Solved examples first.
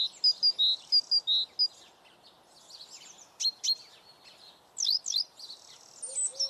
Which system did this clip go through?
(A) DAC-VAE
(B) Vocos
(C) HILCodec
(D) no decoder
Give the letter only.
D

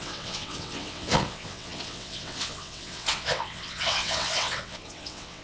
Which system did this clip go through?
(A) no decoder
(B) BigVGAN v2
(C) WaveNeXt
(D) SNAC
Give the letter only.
C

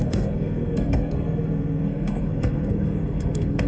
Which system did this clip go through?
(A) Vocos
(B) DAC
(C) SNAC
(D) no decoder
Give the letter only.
C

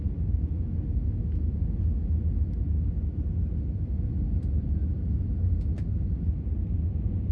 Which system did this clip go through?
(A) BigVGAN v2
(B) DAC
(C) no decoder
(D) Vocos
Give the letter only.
C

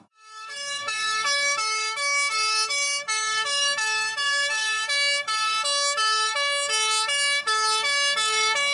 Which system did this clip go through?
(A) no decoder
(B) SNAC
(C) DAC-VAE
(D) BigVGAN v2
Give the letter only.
C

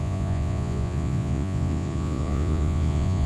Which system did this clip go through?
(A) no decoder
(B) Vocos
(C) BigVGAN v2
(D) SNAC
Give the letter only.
B